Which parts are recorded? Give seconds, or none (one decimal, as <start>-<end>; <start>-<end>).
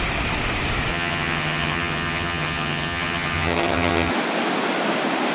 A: 0.0-0.9; 4.1-5.3